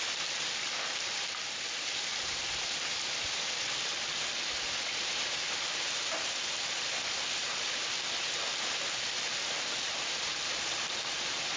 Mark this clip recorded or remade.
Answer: remade